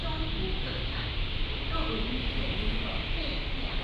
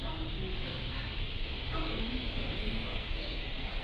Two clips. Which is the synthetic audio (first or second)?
second